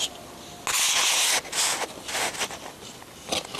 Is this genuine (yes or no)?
yes